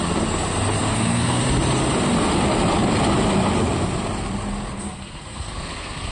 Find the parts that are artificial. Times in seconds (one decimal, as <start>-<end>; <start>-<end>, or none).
0.8-1.4; 4.8-6.1